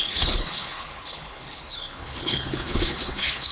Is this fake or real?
fake